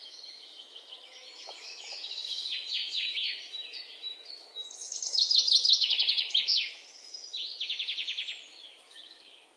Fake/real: fake